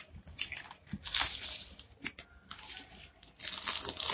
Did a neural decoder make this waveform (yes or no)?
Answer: no